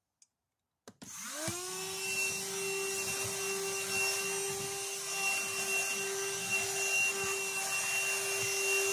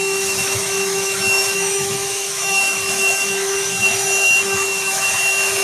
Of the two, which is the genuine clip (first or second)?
first